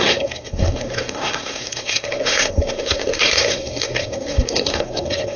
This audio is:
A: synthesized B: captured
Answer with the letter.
A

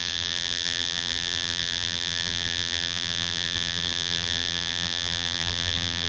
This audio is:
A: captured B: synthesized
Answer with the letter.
B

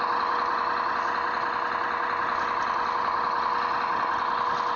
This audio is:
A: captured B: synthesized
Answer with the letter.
A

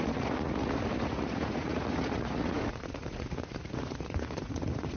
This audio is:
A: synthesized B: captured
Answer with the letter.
A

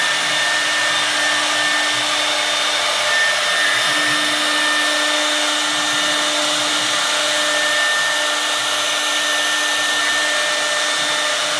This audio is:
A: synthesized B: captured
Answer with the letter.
B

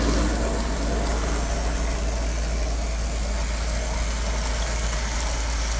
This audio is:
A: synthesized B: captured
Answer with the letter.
B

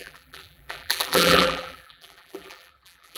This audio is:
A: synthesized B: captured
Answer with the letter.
A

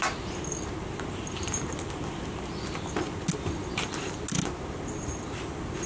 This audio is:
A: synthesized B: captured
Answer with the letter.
B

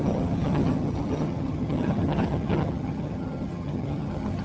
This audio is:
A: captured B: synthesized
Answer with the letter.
B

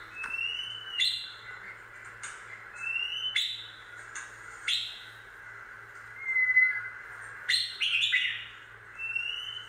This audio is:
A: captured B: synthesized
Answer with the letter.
A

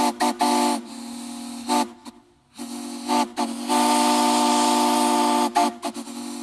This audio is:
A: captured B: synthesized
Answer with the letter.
A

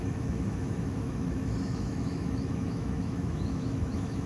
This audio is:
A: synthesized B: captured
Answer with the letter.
A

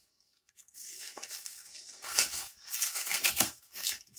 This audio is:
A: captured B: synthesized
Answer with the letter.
B